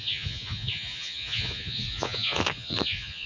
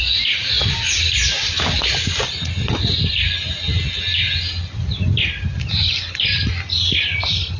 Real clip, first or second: second